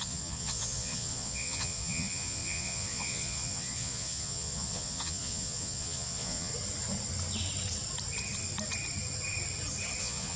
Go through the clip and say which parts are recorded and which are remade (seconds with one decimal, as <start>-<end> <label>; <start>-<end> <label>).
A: 0.0-6.5 remade; 6.5-10.0 recorded; 10.0-10.4 remade